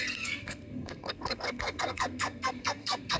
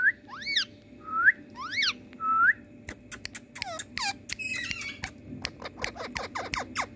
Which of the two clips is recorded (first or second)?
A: second